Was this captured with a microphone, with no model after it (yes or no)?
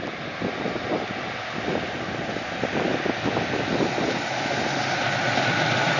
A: yes